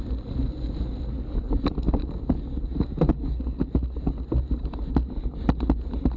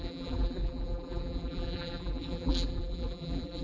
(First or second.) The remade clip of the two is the second